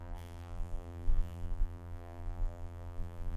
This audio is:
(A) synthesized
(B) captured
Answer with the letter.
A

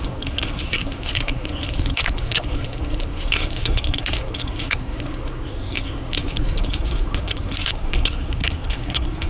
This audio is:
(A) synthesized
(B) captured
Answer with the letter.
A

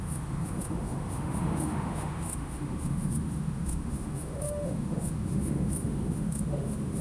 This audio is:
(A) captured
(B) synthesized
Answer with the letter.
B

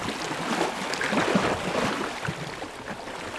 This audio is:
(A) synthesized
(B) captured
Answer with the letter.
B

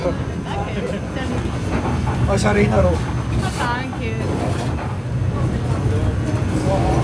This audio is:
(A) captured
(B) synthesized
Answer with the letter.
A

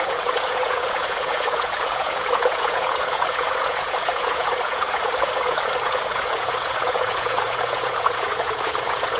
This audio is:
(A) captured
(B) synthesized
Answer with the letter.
B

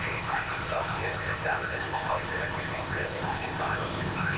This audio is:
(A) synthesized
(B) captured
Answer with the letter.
A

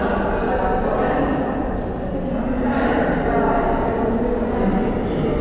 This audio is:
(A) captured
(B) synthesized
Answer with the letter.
A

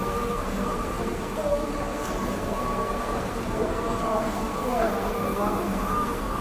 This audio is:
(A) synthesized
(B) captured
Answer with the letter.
A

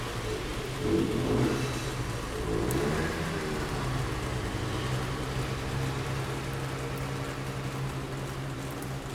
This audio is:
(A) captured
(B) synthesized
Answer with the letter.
A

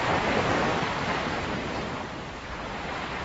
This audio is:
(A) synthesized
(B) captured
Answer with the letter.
A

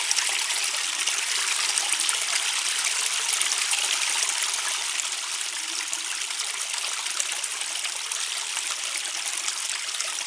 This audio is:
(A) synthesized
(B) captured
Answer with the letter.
B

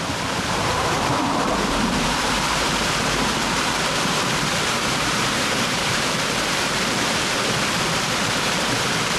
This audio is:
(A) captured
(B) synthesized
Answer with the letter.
B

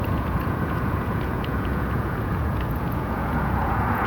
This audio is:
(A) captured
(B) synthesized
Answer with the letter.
B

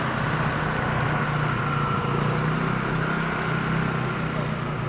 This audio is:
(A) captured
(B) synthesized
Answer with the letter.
A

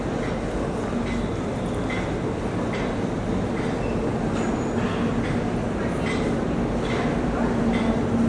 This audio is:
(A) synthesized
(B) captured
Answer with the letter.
B